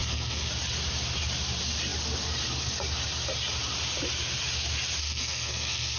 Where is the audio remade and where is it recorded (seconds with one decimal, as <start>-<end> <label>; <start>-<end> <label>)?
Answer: 0.0-0.5 remade; 0.5-5.0 recorded; 5.0-6.0 remade